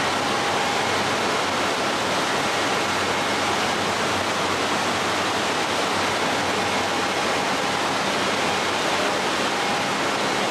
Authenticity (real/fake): real